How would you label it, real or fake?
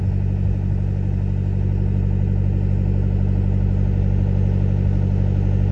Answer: real